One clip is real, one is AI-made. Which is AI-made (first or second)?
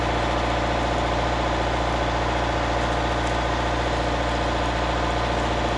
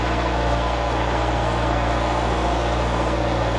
second